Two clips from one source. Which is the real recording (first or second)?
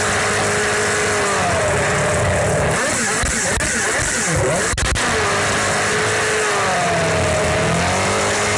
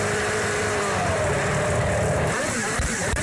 first